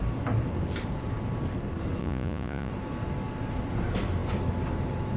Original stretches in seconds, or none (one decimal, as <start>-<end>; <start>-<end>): 0.0-2.0; 2.7-5.2